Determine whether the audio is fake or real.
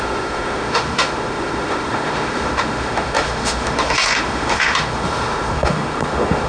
fake